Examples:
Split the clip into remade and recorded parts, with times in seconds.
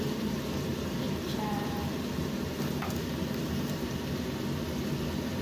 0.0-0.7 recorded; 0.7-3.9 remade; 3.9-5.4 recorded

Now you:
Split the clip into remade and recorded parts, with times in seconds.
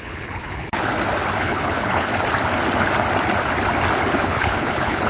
0.0-0.9 remade; 0.9-1.4 recorded; 1.4-2.1 remade; 2.1-4.2 recorded; 4.2-5.1 remade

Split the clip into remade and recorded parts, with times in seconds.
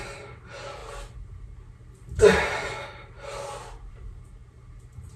0.0-5.2 recorded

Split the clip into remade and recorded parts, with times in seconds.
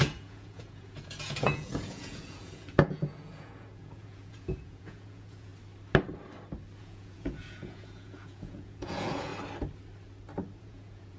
0.0-5.5 remade; 5.5-6.8 recorded; 6.8-9.3 remade; 9.3-10.6 recorded; 10.6-11.2 remade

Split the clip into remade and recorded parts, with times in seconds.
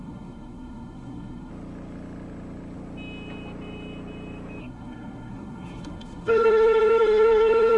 0.0-1.5 remade; 1.5-4.6 recorded; 4.6-7.8 remade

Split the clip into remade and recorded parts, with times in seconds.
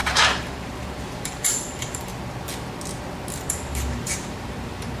0.0-2.1 remade; 2.1-3.6 recorded; 3.6-5.0 remade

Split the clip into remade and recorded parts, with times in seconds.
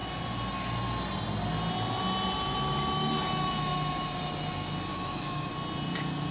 0.0-4.9 recorded; 4.9-5.5 remade; 5.5-6.3 recorded